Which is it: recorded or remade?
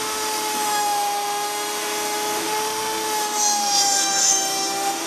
remade